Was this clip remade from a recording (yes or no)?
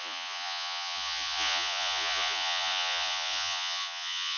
yes